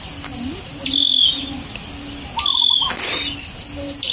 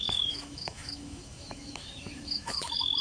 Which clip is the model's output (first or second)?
second